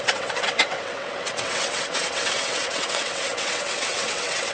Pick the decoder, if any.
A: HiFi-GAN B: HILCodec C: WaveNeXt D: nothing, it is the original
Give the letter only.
C